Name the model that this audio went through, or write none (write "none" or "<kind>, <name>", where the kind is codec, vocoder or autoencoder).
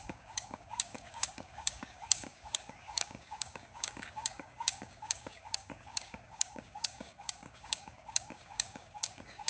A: codec, DAC